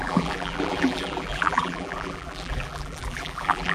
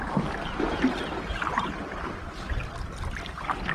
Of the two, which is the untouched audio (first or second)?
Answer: second